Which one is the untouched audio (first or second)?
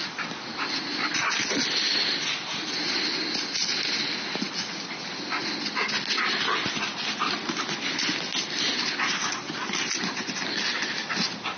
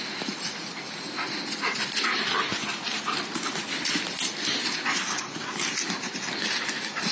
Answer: first